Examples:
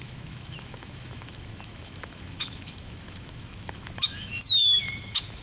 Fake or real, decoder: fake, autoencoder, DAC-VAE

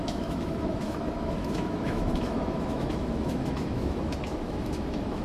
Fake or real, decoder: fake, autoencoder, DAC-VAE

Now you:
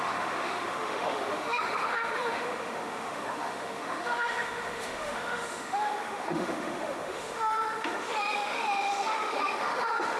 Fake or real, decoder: fake, autoencoder, DAC-VAE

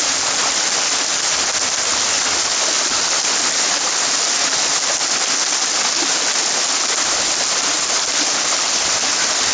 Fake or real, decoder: real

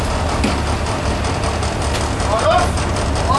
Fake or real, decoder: real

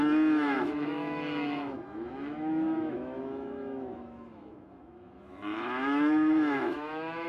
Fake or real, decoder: fake, autoencoder, DAC-VAE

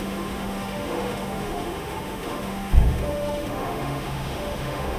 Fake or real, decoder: fake, autoencoder, DAC-VAE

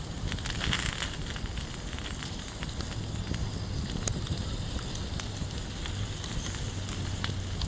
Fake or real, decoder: real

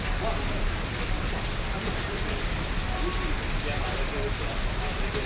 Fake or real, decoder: real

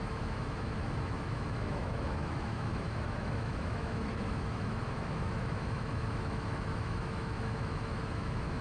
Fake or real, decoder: fake, autoencoder, DAC-VAE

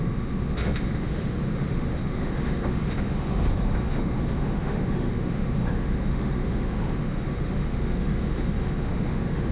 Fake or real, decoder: fake, autoencoder, DAC-VAE